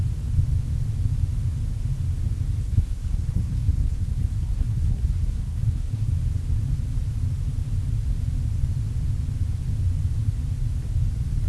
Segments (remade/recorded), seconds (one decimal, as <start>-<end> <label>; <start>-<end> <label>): 0.0-2.6 recorded; 2.6-6.1 remade; 6.1-11.5 recorded